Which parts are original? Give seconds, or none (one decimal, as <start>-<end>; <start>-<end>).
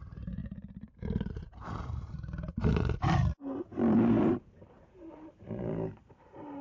0.4-1.3